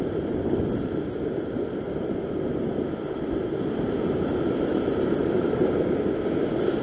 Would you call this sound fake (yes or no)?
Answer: yes